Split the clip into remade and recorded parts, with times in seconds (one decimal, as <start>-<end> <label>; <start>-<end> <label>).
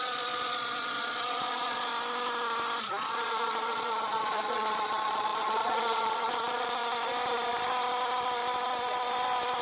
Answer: 0.0-1.9 remade; 1.9-2.8 recorded; 2.8-6.8 remade; 6.8-9.6 recorded